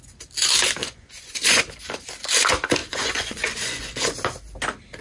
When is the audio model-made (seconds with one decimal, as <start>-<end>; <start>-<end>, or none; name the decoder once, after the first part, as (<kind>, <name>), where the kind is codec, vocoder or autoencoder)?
0.8-1.6 (vocoder, Vocos); 2.8-4.1